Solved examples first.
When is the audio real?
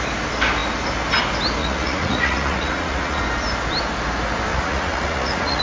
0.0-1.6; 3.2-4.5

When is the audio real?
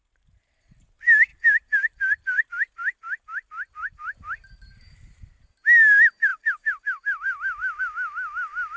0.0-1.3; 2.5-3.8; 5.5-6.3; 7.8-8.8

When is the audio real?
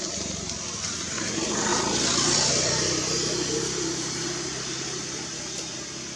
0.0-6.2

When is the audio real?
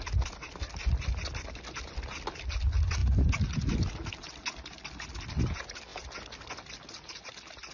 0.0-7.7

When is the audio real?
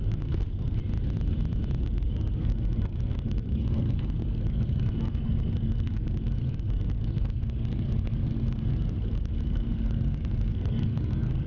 0.8-1.8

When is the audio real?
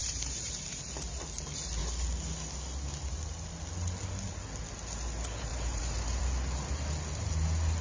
0.8-5.5; 6.2-7.8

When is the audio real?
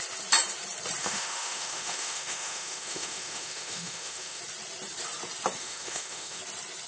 0.0-1.0; 4.4-5.6; 6.4-6.9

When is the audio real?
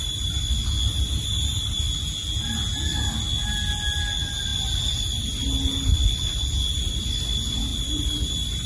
0.0-7.7